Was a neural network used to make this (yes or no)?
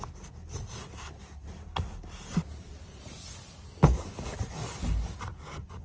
no